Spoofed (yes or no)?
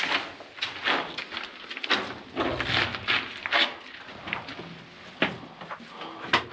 no